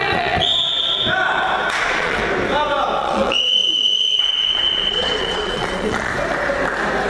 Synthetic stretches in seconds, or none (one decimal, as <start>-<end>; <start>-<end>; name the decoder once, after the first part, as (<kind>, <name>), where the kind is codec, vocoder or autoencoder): 0.0-0.5 (vocoder, Vocos); 1.8-2.2; 3.0-6.1